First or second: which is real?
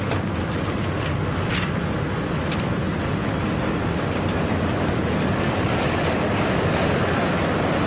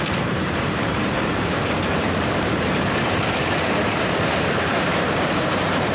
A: first